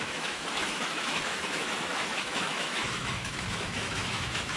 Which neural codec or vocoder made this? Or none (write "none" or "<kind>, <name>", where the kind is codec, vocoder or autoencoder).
autoencoder, DAC-VAE